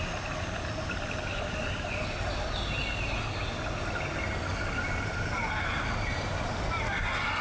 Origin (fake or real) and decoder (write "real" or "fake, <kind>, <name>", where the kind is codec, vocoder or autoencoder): real